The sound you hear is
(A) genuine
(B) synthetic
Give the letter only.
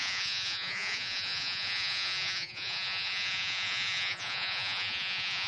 B